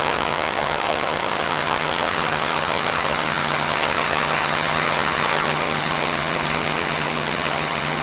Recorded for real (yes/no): no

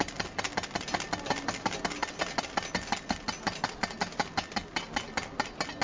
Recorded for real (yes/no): yes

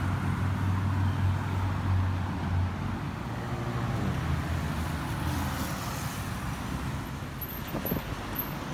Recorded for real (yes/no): yes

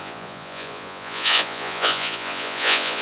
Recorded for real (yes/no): no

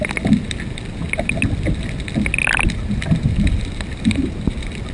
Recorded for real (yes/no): yes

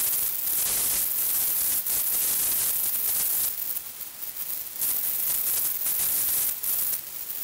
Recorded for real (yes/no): yes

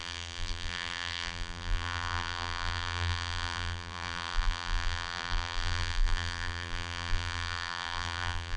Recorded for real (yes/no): no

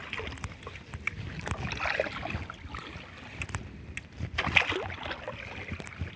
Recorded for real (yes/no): yes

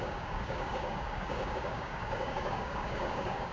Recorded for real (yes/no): no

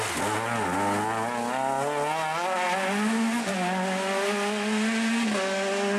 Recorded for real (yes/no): yes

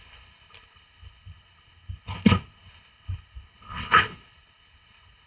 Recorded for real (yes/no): no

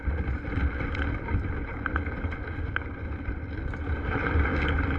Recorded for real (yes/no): yes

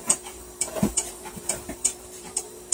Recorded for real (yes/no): no